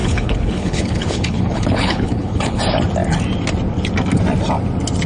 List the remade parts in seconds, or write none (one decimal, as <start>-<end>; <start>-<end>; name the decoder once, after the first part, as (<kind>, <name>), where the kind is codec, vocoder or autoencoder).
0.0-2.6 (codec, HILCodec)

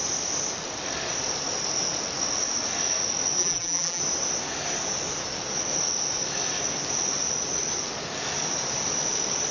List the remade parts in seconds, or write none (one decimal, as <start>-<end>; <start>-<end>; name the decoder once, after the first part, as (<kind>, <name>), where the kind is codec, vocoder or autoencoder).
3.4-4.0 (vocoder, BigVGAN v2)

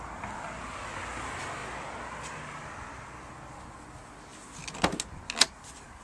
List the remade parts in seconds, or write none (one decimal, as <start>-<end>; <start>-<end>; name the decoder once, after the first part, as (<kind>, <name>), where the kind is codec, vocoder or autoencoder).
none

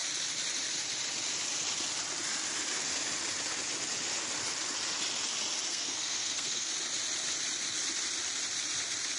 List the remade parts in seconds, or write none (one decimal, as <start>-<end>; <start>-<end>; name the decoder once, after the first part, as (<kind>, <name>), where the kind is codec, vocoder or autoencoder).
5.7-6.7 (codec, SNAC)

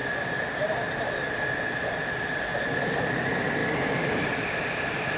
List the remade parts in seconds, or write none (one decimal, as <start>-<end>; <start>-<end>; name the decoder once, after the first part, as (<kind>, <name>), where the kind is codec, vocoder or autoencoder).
2.1-2.5 (vocoder, BigVGAN v2); 3.1-3.6; 4.3-5.2

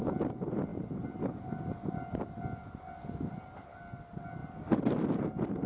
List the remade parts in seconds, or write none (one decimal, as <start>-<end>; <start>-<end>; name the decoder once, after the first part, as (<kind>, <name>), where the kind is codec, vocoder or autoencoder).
none